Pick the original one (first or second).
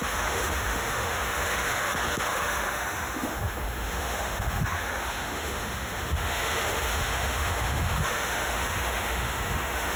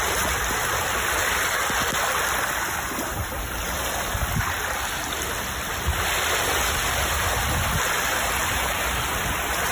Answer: second